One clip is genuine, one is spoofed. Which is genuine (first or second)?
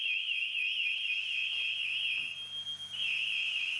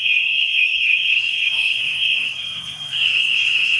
first